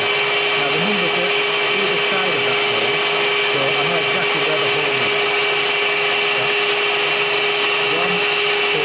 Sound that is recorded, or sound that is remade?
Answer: recorded